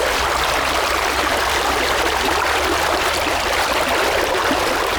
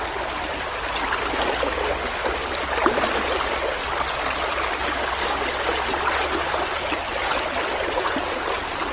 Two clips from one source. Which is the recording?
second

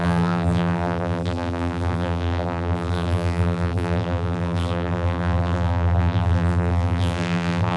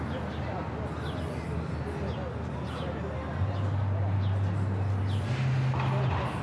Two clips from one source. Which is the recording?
second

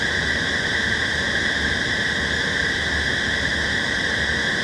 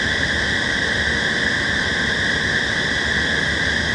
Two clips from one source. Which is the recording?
first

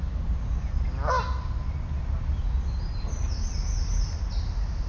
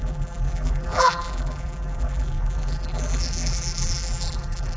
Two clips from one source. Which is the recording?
first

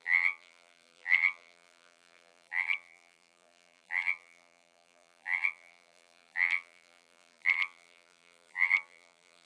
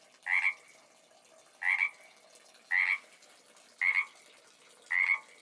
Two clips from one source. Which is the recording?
second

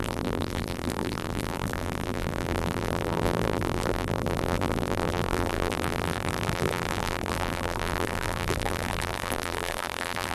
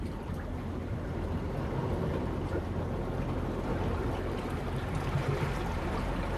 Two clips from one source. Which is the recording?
second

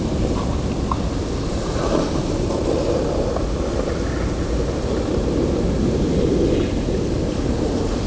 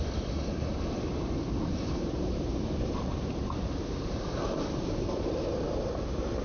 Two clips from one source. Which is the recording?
first